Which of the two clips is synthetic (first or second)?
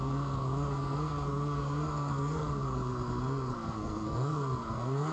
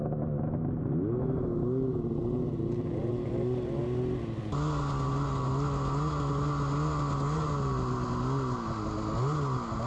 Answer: first